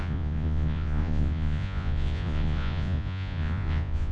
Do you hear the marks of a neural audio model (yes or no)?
yes